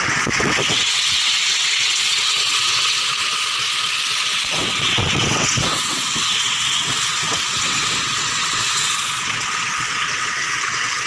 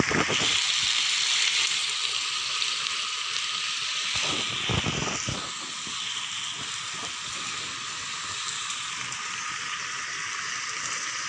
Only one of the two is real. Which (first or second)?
second